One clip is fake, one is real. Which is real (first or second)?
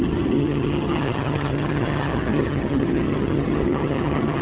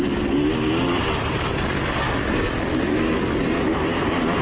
second